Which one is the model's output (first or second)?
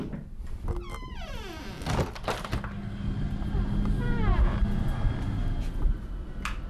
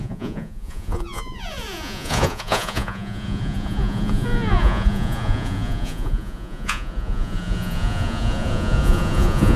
second